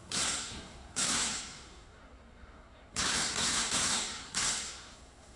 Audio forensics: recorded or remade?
remade